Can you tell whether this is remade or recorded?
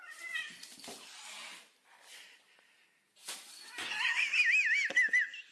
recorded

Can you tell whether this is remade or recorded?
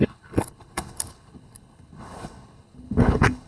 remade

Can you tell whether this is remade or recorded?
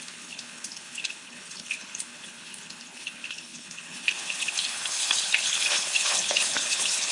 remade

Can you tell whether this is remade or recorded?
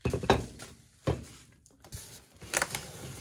recorded